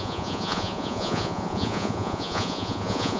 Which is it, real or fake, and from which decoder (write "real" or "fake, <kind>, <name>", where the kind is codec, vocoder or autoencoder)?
fake, vocoder, Vocos